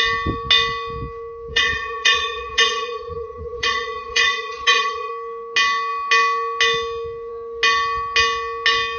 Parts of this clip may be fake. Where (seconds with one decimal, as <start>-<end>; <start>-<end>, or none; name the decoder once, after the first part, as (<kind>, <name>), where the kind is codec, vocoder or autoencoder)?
1.5-5.1 (vocoder, Vocos)